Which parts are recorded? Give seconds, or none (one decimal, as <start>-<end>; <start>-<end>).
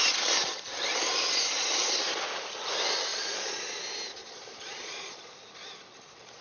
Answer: 0.0-3.1; 3.6-4.2; 5.3-6.4